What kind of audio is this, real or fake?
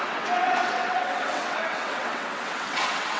fake